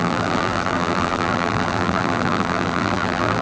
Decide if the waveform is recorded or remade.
remade